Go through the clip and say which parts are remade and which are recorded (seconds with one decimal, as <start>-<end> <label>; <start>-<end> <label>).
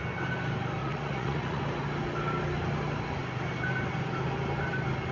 0.0-0.8 recorded; 0.8-1.6 remade; 1.6-5.1 recorded